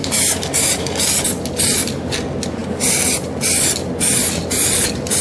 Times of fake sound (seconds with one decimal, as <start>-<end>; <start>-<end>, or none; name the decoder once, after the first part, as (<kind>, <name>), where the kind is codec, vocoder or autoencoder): 0.0-0.5 (vocoder, BigVGAN v2)